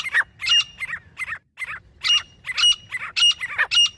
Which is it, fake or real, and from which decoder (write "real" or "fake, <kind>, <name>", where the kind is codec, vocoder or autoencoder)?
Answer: real